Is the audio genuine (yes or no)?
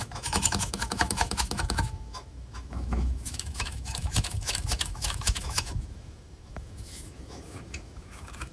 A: no